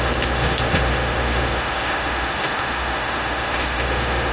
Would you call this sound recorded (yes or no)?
no